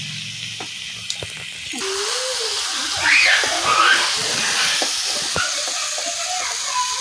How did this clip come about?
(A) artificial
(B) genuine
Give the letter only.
B